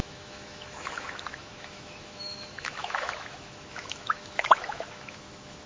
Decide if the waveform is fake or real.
fake